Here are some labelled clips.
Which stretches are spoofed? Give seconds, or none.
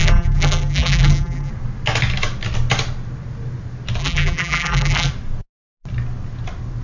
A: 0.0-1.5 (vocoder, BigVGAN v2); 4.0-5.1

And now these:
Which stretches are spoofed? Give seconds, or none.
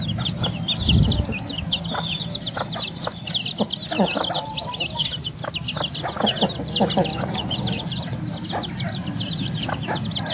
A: 7.1-8.1 (vocoder, BigVGAN v2)